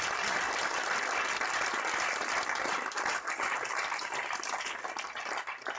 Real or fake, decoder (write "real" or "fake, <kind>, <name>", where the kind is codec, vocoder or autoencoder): real